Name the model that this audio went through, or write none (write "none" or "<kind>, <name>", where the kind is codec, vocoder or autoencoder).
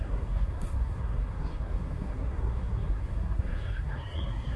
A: codec, SNAC